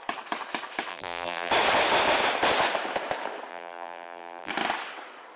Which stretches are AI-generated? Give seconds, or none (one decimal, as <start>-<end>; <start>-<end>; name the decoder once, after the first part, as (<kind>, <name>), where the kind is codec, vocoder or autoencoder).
0.9-1.5 (vocoder, BigVGAN v2); 3.5-4.5